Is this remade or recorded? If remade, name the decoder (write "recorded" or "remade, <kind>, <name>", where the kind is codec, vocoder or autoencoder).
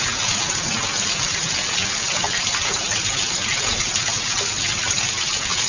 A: recorded